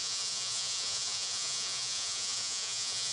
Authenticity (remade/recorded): remade